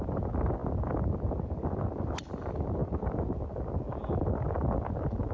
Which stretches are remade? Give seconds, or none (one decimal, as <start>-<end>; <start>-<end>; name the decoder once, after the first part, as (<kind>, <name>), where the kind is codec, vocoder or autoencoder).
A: none